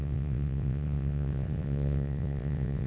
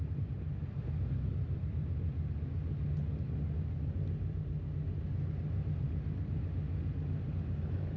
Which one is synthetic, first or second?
first